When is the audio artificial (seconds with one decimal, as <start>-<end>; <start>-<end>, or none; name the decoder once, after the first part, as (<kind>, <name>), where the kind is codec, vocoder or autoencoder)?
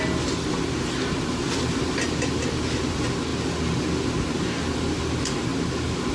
none